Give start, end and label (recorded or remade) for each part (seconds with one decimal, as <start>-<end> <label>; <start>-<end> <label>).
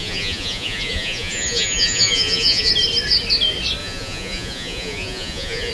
0.0-2.7 remade; 2.7-3.8 recorded; 3.8-5.7 remade